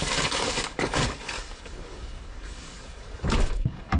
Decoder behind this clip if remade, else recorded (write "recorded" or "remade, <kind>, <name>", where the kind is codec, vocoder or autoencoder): remade, codec, DAC